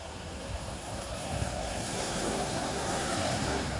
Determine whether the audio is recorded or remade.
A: remade